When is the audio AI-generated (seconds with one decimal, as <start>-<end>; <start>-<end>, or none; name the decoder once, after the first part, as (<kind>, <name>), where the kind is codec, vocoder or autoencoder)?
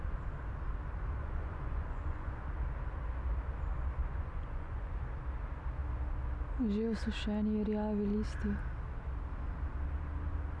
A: 1.2-2.4 (vocoder, Vocos); 4.0-5.0